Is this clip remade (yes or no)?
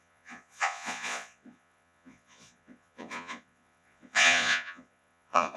yes